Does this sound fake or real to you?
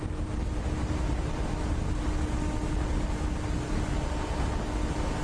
real